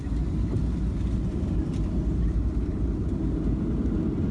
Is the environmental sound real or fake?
real